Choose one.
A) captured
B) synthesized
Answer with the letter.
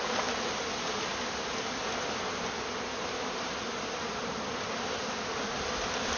A